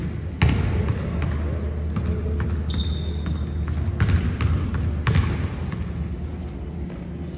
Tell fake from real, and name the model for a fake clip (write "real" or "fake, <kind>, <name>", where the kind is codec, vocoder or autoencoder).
real